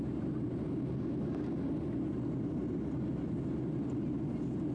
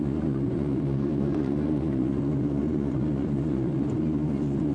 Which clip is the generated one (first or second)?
second